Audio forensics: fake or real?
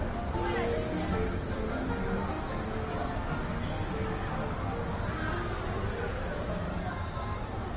real